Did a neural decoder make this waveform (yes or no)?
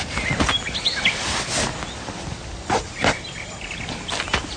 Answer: no